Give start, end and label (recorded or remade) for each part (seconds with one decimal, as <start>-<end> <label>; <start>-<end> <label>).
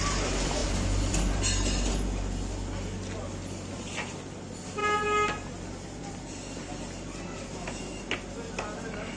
0.0-9.2 recorded